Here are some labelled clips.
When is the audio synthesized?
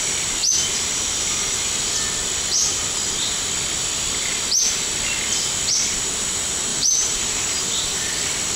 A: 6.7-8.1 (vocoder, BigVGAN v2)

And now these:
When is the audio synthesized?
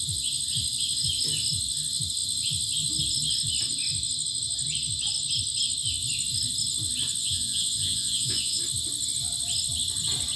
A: 7.2-8.6 (vocoder, Vocos)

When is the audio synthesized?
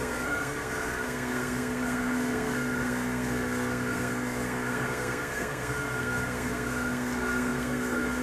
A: 0.0-8.2 (codec, SNAC)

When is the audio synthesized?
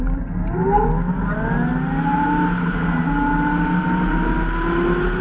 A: none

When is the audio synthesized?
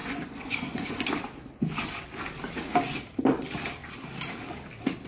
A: 0.0-1.0 (vocoder, Vocos)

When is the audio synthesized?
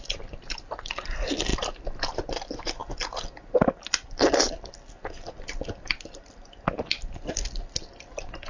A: none